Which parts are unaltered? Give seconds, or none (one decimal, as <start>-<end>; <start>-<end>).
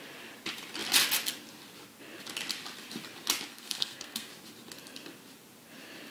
0.0-3.5; 4.3-6.1